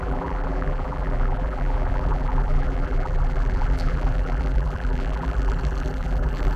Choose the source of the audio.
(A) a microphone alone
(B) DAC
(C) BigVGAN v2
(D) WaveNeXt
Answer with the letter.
C